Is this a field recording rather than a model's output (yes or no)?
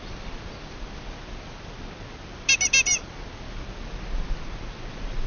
yes